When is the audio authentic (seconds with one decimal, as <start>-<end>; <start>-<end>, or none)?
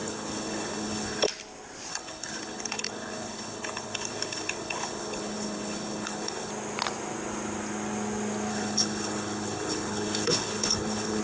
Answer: 1.3-1.9; 6.5-8.5